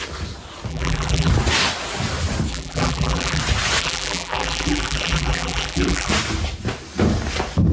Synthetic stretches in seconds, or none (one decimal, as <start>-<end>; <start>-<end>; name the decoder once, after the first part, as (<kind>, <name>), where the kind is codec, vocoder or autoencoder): 0.7-1.3 (vocoder, BigVGAN v2); 2.5-3.4; 3.8-6.1